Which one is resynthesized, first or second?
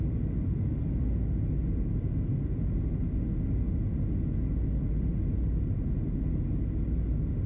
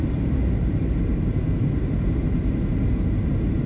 second